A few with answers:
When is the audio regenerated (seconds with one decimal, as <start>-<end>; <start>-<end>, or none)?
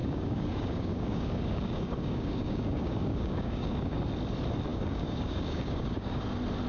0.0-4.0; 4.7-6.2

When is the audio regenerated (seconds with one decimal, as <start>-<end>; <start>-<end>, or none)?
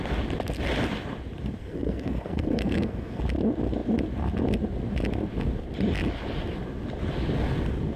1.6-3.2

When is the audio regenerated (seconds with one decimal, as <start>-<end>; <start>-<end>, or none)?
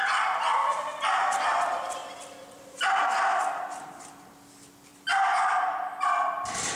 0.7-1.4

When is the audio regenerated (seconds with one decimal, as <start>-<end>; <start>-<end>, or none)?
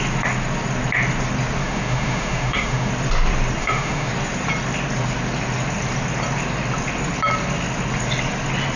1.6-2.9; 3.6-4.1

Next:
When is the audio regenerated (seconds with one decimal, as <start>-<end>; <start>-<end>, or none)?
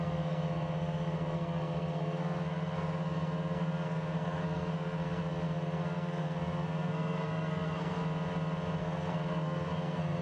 0.0-8.0; 8.8-10.2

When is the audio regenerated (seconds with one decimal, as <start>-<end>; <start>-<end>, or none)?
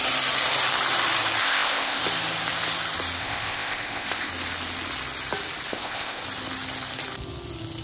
1.4-2.0; 3.2-4.3; 5.7-6.2